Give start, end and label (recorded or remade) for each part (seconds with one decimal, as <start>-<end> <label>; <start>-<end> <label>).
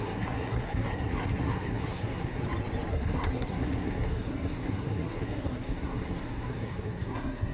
0.0-2.4 remade; 2.4-2.9 recorded; 2.9-7.5 remade